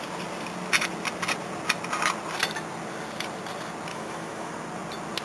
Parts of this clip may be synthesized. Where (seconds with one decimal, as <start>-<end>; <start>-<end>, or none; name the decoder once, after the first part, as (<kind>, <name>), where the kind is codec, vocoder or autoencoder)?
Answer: 3.9-4.5 (autoencoder, DAC-VAE)